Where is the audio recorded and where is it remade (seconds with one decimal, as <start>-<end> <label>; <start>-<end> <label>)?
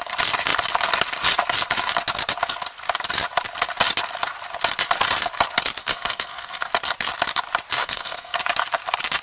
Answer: 0.0-5.8 recorded; 5.8-6.7 remade; 6.7-7.8 recorded; 7.8-8.4 remade; 8.4-9.2 recorded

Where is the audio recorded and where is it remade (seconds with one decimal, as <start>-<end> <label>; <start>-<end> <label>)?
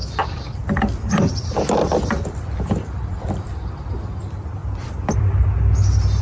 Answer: 0.0-3.7 remade; 3.7-4.6 recorded; 4.6-5.4 remade; 5.4-6.2 recorded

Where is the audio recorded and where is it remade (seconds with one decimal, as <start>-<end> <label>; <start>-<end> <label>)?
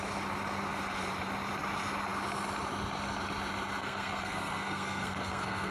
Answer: 0.0-3.8 recorded; 3.8-5.7 remade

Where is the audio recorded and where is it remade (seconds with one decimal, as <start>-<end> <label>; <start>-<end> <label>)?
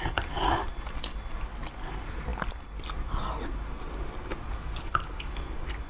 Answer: 0.0-5.9 recorded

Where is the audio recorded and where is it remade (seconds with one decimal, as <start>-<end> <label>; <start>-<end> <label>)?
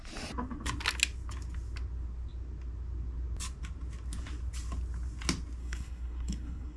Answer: 0.0-5.6 recorded; 5.6-6.8 remade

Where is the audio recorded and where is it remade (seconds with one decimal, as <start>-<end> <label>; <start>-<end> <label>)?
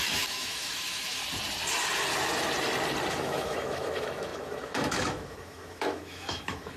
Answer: 0.0-1.2 remade; 1.2-3.1 recorded; 3.1-6.8 remade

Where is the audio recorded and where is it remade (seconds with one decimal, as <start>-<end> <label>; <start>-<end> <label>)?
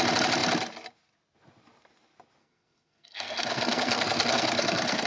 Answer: 0.0-2.4 recorded; 2.4-5.1 remade